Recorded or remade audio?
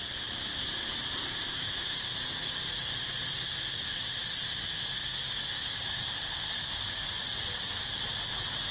recorded